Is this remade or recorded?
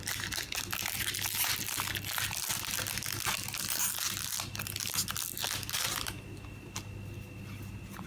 recorded